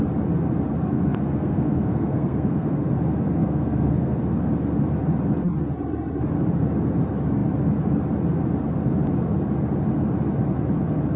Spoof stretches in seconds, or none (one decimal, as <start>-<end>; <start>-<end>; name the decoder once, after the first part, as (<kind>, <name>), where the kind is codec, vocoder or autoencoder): 0.8-2.9 (codec, SNAC); 3.4-4.2